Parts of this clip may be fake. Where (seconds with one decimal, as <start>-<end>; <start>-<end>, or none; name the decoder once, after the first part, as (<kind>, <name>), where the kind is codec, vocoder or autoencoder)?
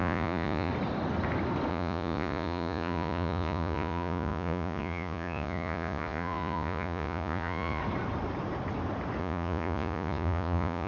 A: 0.0-0.7 (vocoder, Vocos); 1.7-7.8; 9.2-10.9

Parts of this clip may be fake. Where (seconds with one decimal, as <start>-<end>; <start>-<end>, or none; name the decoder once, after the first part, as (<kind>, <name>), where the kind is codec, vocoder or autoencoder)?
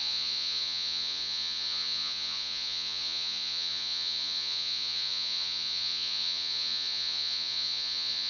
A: 0.0-8.3 (vocoder, Vocos)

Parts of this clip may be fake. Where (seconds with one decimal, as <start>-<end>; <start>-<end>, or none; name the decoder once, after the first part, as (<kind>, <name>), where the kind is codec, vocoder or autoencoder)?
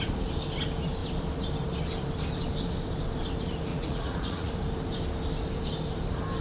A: 3.7-4.5 (vocoder, Vocos)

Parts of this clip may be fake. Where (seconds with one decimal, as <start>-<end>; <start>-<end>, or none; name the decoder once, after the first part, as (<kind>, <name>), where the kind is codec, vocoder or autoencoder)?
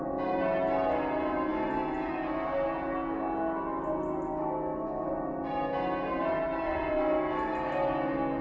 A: none